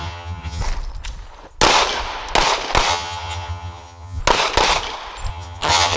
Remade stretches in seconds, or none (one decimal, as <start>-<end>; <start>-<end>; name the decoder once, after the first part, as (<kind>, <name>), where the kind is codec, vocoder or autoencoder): 0.0-0.6 (vocoder, HiFi-GAN); 2.9-4.2; 5.3-6.0